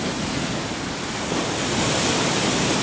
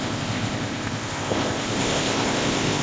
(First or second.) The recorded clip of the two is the first